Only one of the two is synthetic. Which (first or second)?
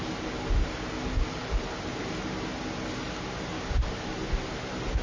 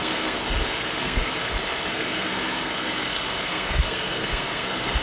second